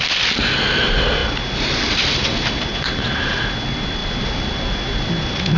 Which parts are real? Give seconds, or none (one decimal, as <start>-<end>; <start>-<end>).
0.0-4.0; 5.1-5.6